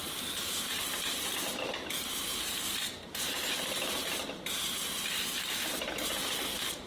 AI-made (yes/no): yes